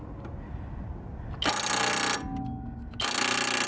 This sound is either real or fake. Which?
real